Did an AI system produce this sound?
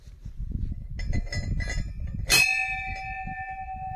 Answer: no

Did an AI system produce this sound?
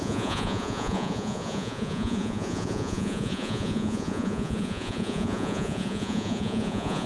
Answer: yes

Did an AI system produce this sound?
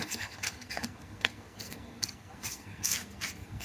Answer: yes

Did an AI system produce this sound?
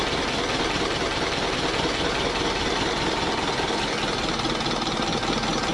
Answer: no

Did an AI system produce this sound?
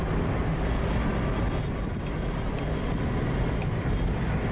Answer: no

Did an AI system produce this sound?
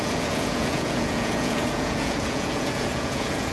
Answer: yes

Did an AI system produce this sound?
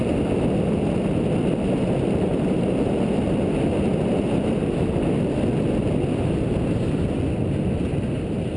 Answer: no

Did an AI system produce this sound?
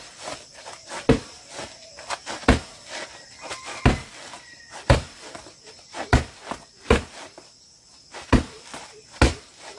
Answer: no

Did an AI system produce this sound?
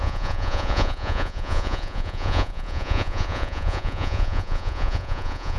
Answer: yes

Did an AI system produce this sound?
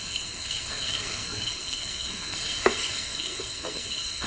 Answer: yes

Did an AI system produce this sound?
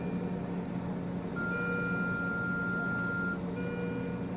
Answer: no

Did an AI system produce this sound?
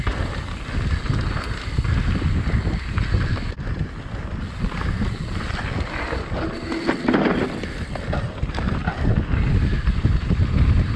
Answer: no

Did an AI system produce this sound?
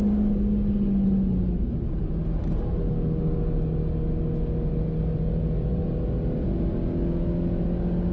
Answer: no